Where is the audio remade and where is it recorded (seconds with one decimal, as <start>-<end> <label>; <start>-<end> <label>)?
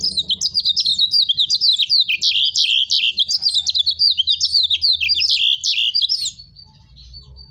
0.0-5.6 recorded; 5.6-7.5 remade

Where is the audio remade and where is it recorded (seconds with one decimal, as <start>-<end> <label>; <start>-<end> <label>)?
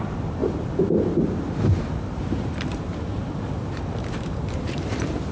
0.0-0.4 remade; 0.4-1.6 recorded; 1.6-2.9 remade; 2.9-3.7 recorded; 3.7-5.3 remade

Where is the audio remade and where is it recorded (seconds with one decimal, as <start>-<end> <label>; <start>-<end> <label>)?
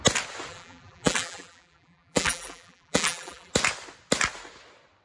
0.0-0.5 recorded; 0.5-3.5 remade; 3.5-5.0 recorded